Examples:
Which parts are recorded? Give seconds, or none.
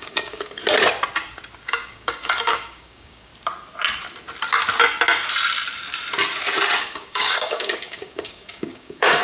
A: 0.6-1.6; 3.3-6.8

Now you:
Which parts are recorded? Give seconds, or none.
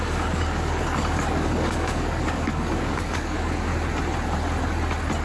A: 3.7-5.2